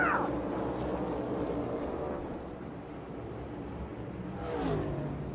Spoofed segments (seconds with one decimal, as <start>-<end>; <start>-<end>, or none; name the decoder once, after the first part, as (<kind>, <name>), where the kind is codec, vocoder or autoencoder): 0.0-0.9 (vocoder, BigVGAN v2); 2.2-5.3